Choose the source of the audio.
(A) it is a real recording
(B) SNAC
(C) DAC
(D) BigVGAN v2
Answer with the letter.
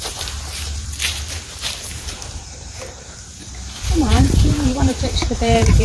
D